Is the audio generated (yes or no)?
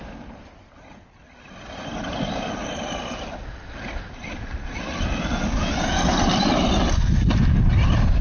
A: no